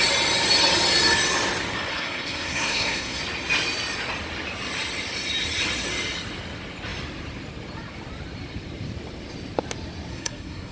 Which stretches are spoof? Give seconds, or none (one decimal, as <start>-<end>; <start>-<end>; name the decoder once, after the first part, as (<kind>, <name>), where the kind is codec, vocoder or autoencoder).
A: 1.9-3.2 (codec, SNAC); 10.1-10.7